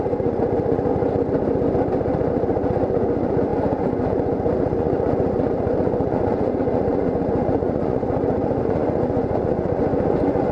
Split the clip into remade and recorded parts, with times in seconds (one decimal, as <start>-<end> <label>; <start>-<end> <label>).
0.0-0.9 remade; 0.9-2.3 recorded; 2.3-10.5 remade